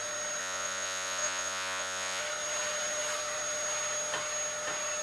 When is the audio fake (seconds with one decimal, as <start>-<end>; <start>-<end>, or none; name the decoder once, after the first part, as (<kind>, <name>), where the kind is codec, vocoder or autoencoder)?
0.4-2.2 (vocoder, Vocos)